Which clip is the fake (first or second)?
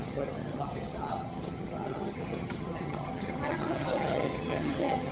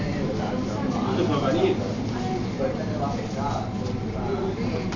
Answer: first